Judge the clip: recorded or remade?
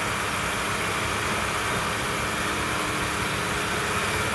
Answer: recorded